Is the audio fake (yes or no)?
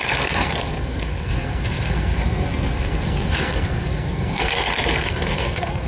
yes